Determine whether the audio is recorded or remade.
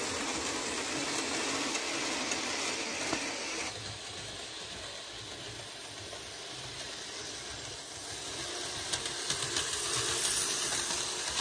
recorded